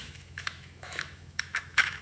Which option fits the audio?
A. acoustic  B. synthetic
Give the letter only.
B